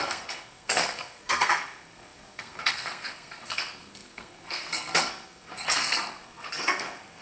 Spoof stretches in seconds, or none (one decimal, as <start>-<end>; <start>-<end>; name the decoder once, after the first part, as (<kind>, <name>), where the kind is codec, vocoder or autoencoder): 0.0-7.2 (codec, SNAC)